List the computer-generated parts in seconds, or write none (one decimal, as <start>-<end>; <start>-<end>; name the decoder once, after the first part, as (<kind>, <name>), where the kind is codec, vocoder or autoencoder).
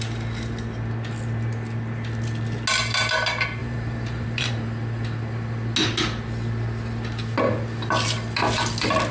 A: 3.6-4.5 (vocoder, BigVGAN v2)